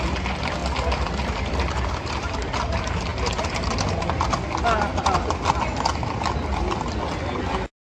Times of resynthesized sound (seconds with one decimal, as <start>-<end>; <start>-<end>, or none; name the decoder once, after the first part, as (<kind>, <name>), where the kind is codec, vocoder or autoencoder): none